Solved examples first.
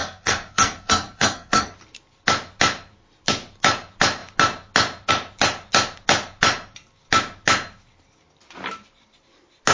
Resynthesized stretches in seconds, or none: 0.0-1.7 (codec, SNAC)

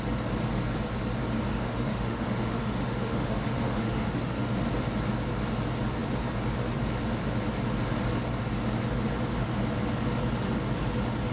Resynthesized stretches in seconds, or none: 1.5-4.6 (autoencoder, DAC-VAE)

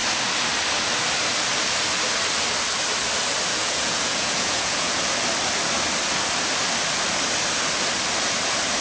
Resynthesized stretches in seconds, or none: 3.5-5.1 (vocoder, Vocos)